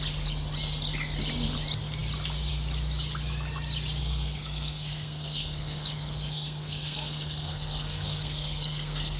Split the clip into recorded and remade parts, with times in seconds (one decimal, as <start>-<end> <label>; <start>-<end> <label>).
0.0-4.0 recorded; 4.0-9.2 remade